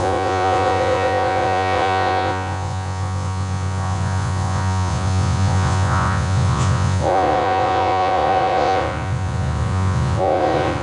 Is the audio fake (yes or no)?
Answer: yes